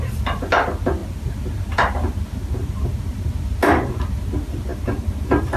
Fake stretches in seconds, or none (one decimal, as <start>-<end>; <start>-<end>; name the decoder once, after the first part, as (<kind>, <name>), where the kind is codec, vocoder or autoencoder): 4.7-5.6 (vocoder, BigVGAN v2)